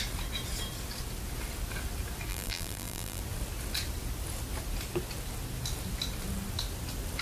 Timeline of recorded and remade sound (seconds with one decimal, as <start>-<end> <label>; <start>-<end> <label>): 0.0-2.3 recorded; 2.3-3.2 remade; 3.2-7.2 recorded